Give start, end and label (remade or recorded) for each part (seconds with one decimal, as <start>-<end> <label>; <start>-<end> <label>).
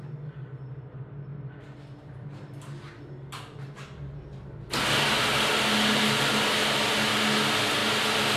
0.0-8.4 recorded